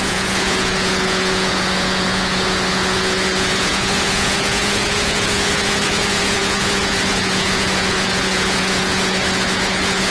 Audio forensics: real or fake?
fake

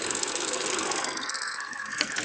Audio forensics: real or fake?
fake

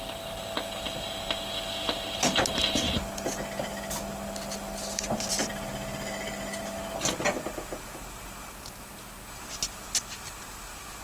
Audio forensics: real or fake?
real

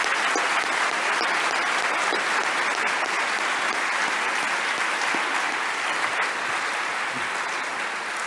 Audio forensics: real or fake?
real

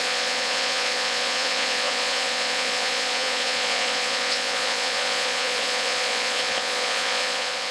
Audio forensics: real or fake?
fake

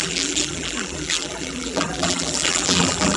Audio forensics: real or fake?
fake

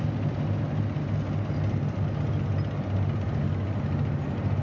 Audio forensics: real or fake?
real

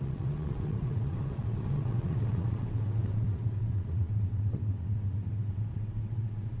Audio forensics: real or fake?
fake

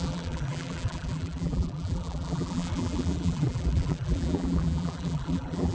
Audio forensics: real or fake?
fake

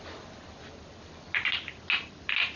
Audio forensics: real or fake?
real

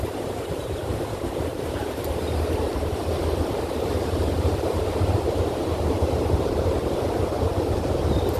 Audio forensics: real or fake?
fake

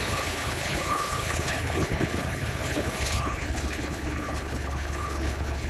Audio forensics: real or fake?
fake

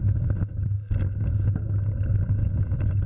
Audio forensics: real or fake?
real